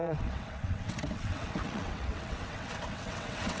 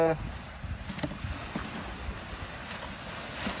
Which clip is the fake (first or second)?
first